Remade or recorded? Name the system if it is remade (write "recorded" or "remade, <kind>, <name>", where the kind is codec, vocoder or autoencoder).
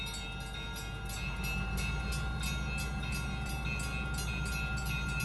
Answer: recorded